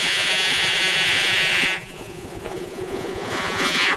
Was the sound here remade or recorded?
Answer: remade